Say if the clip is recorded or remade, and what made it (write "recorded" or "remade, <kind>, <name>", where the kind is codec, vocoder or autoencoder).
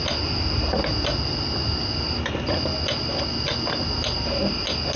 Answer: recorded